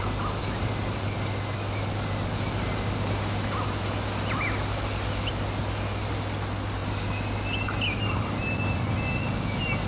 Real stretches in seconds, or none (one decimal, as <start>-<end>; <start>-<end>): 0.0-0.4; 5.3-6.8; 8.0-9.9